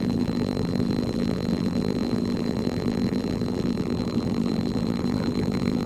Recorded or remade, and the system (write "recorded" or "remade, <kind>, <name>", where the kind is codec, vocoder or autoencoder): remade, vocoder, BigVGAN v2